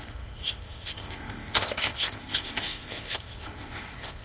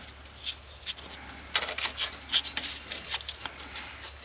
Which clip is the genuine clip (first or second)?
second